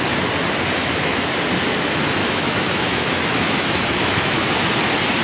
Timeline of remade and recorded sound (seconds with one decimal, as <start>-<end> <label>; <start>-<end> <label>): 0.0-0.8 recorded; 0.8-1.3 remade; 1.3-2.2 recorded; 2.2-4.5 remade; 4.5-5.2 recorded